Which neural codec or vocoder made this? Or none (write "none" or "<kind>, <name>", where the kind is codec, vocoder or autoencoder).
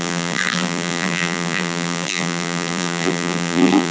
vocoder, BigVGAN v2